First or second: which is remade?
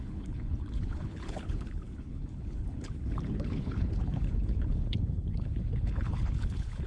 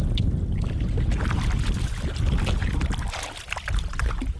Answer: first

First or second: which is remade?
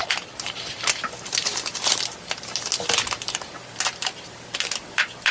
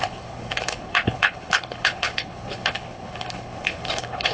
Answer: second